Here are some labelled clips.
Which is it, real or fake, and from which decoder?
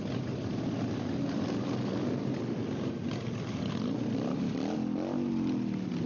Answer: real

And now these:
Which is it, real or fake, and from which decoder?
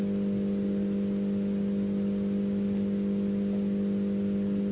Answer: real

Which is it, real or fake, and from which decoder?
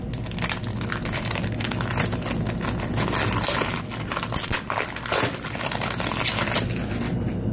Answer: real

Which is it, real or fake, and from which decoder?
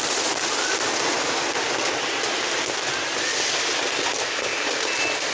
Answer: real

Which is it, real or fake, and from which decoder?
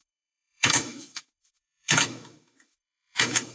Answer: fake, autoencoder, DAC-VAE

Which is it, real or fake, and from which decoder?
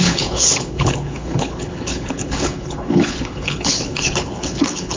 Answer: fake, codec, HILCodec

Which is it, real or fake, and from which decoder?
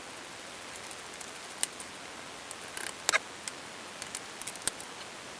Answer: real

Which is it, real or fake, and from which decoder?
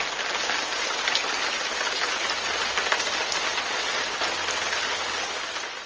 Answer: real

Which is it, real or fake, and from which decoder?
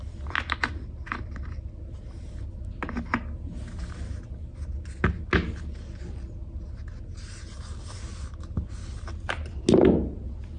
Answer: real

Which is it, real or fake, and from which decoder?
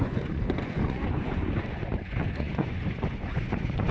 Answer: fake, vocoder, Vocos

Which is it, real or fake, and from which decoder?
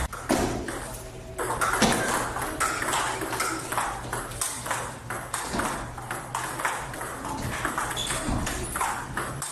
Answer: real